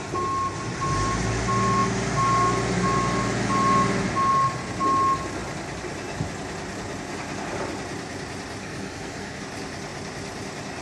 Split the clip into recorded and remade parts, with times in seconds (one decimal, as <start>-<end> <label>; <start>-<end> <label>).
0.0-8.6 recorded; 8.6-9.4 remade; 9.4-10.8 recorded